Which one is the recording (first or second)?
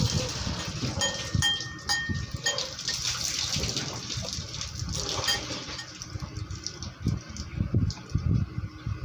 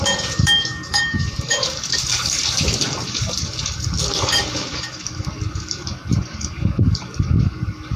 first